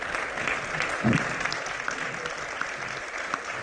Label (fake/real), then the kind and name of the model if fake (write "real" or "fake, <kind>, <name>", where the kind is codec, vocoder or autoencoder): real